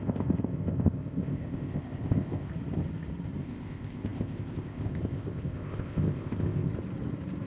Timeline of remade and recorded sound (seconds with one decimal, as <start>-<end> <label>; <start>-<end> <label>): 0.0-2.5 remade; 2.5-3.4 recorded; 3.4-6.7 remade; 6.7-7.5 recorded